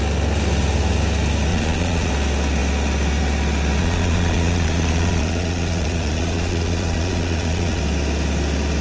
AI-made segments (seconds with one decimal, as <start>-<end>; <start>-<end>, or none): 1.5-2.1; 3.8-7.8